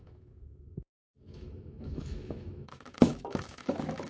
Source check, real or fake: fake